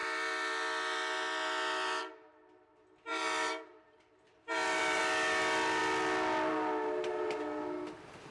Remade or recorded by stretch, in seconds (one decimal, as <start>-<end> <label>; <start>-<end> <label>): 0.0-3.1 recorded; 3.1-5.0 remade; 5.0-8.3 recorded